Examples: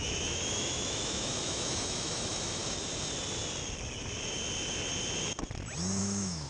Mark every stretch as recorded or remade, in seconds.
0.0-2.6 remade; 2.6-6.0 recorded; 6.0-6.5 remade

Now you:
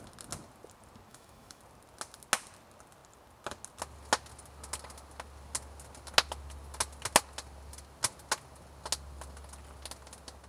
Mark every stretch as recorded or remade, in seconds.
0.0-1.1 recorded; 1.1-1.6 remade; 1.6-10.5 recorded

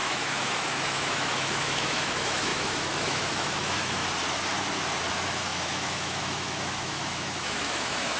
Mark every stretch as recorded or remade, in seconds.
0.0-4.0 remade; 4.0-5.1 recorded; 5.1-8.2 remade

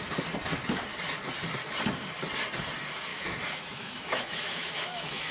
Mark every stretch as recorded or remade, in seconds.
0.0-3.1 recorded; 3.1-5.3 remade

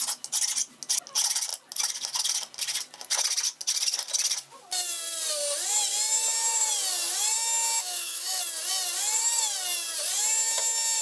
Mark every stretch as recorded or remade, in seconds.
0.0-7.8 recorded; 7.8-8.4 remade; 8.4-11.0 recorded